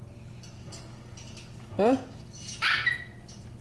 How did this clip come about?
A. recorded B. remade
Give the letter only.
A